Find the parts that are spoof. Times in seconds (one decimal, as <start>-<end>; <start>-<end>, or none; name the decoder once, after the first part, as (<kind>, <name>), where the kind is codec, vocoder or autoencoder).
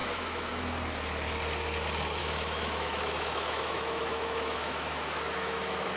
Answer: 0.0-0.5 (autoencoder, DAC-VAE); 2.2-6.0